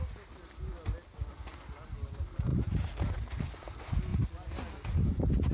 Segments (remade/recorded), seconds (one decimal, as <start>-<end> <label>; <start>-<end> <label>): 0.0-5.5 recorded